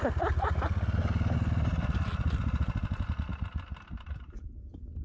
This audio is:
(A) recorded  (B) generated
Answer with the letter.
A